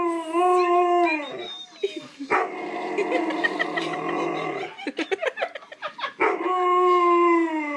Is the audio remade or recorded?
recorded